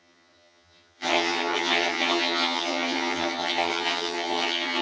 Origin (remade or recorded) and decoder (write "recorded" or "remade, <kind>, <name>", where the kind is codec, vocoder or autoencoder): remade, vocoder, HiFi-GAN